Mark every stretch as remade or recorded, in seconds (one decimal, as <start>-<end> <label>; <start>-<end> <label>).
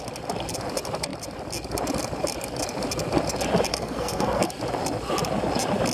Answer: 0.0-3.7 recorded; 3.7-4.5 remade; 4.5-5.9 recorded